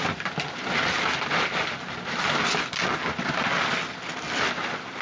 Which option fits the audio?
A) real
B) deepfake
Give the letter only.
A